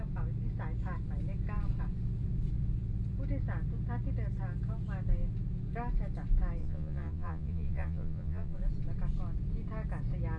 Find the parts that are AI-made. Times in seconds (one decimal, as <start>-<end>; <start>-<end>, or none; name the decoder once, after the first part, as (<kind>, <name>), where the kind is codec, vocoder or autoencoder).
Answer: 6.6-8.6 (vocoder, Vocos)